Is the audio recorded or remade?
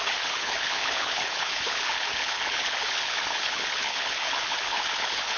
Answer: remade